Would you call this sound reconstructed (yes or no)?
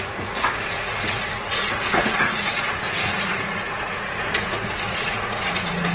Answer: yes